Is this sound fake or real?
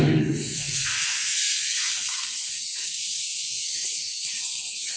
fake